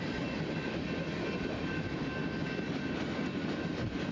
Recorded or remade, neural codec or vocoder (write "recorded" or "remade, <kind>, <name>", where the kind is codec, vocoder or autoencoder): recorded